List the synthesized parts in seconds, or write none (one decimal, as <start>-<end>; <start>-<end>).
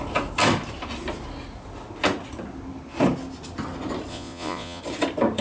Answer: 4.1-4.8